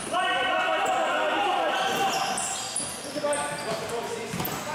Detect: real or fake real